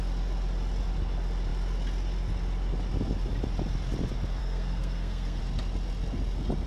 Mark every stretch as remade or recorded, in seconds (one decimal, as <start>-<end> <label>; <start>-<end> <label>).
0.0-4.4 recorded; 4.4-5.4 remade; 5.4-6.7 recorded